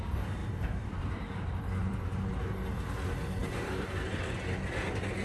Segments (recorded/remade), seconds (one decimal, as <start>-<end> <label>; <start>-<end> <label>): 0.0-0.4 recorded; 0.4-0.9 remade; 0.9-1.8 recorded; 1.8-2.4 remade; 2.4-5.2 recorded